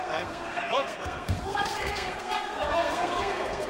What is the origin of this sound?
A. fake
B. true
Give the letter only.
A